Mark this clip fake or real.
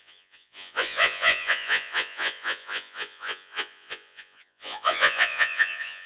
fake